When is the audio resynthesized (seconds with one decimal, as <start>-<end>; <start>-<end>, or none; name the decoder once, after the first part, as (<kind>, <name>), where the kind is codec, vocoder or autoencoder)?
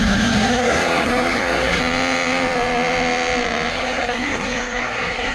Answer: 0.0-1.8 (codec, SNAC); 3.7-5.3